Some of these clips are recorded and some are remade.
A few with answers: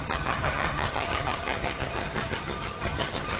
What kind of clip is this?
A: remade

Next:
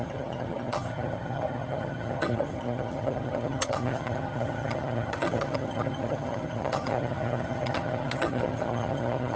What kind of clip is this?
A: remade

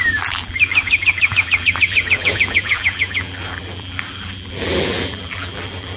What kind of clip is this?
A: remade